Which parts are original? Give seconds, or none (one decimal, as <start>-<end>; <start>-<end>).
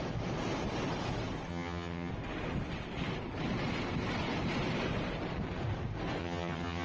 0.0-1.5; 2.1-6.2